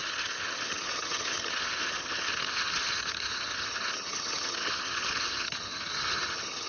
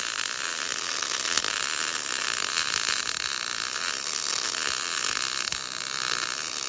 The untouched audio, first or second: second